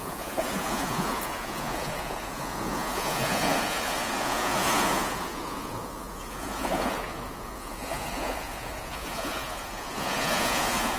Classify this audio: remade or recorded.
remade